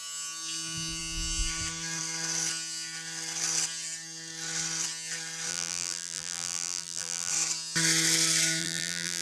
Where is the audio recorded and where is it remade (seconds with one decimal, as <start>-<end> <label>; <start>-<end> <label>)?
0.0-5.5 recorded; 5.5-7.3 remade; 7.3-8.6 recorded; 8.6-9.2 remade